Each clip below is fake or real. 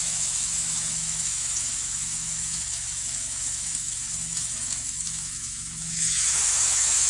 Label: fake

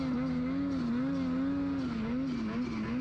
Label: real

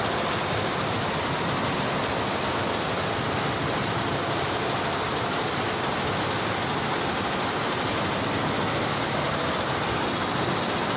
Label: real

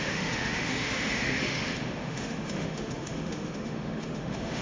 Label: fake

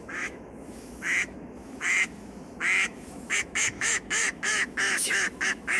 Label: fake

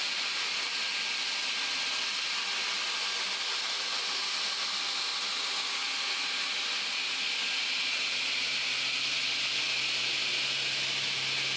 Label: real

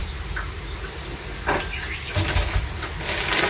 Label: real